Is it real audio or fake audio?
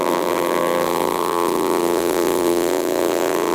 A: fake